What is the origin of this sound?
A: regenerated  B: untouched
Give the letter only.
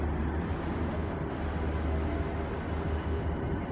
B